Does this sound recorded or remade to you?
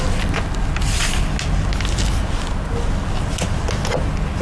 recorded